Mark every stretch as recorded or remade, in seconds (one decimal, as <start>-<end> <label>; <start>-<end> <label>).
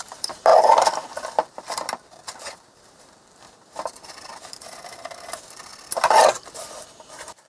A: 0.0-0.5 remade; 0.5-2.8 recorded; 2.8-5.7 remade; 5.7-6.9 recorded; 6.9-7.5 remade